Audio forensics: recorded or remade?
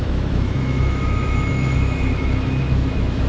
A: remade